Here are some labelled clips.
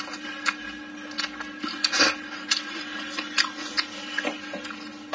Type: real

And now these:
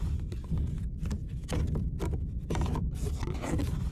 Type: real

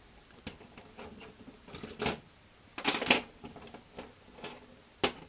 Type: real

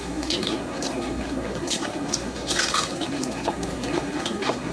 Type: fake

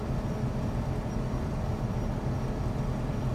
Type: real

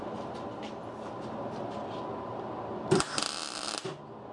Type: real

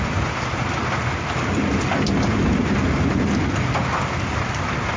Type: real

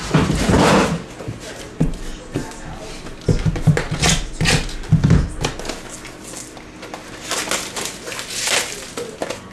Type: real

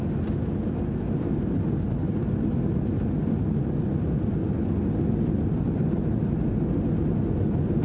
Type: real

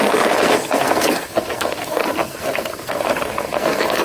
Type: fake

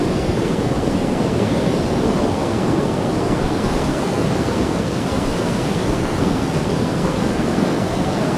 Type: fake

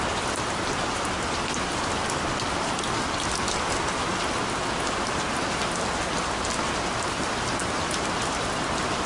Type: real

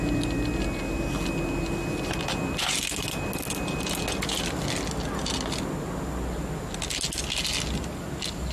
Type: real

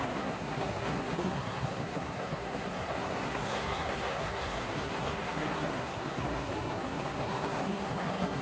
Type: fake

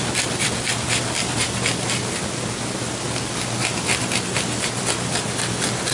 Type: real